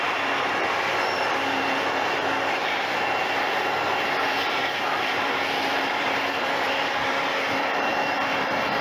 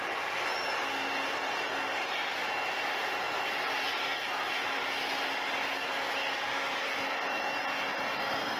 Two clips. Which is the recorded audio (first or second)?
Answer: second